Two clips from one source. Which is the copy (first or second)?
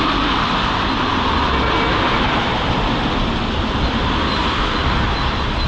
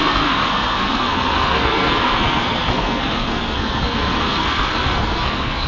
second